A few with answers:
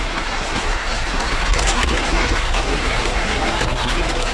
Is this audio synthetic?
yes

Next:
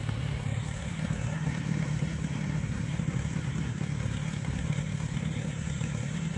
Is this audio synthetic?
yes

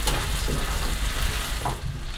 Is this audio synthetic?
no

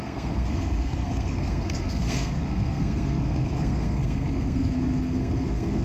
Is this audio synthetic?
yes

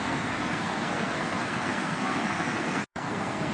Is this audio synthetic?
yes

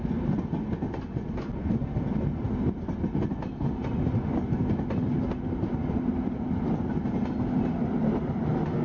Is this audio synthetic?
no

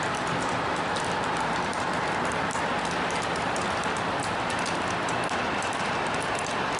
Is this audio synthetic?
no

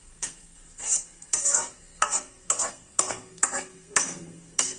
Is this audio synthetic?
yes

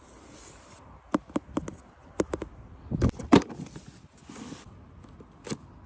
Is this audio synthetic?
no